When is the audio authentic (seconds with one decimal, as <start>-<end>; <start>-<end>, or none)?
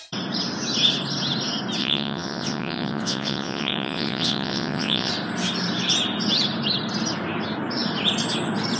0.0-1.8; 5.1-8.8